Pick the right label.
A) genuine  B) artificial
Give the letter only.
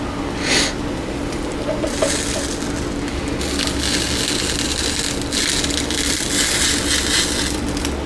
A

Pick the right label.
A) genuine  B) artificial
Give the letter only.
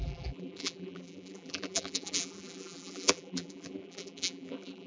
B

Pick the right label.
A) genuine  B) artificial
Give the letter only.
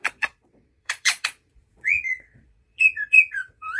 B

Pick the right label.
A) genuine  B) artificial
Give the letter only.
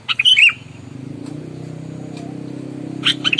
A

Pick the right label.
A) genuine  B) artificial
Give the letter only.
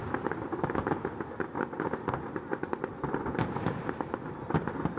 A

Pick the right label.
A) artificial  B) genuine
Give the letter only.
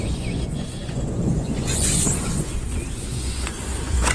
A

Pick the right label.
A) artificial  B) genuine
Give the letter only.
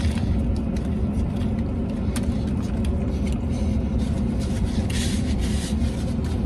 B